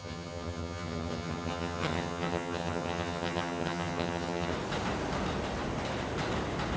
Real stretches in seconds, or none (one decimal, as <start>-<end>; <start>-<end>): 4.5-6.8